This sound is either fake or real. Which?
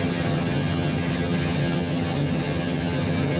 fake